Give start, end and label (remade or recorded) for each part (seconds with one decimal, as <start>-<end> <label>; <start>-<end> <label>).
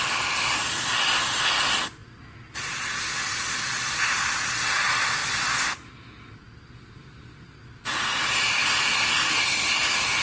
0.0-10.2 recorded